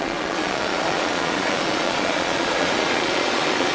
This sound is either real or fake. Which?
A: fake